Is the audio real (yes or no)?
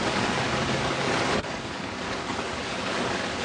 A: no